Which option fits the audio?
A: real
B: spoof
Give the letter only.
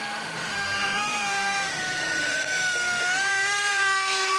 B